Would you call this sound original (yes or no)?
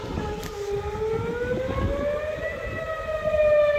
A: yes